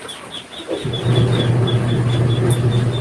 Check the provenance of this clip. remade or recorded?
recorded